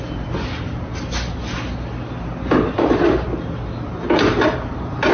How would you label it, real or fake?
real